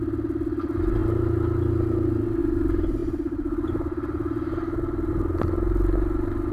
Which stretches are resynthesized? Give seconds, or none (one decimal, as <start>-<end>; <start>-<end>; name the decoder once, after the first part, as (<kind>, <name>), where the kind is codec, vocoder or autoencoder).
3.0-5.1 (vocoder, BigVGAN v2)